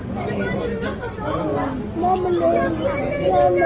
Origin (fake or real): real